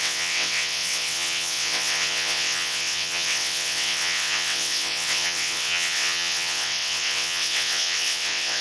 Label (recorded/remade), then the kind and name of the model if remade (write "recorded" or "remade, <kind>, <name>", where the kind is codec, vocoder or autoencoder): remade, vocoder, WaveNeXt